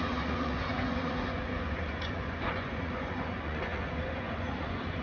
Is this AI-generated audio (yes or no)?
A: yes